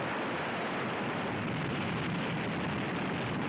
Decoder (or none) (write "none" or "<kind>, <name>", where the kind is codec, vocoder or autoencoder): none